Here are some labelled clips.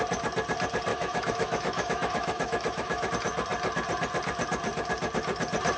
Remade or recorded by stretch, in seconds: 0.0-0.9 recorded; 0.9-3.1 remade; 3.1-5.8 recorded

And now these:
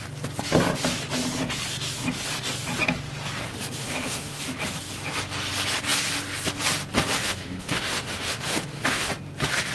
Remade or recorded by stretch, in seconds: 0.0-3.8 recorded; 3.8-4.4 remade; 4.4-7.2 recorded; 7.2-9.1 remade; 9.1-9.7 recorded

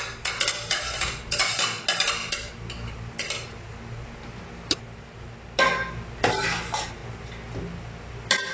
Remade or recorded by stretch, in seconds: 0.0-8.5 recorded